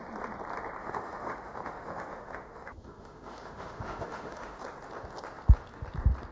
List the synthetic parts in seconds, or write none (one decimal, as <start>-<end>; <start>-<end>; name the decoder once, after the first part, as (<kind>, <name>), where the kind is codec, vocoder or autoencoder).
0.8-4.6 (autoencoder, DAC-VAE)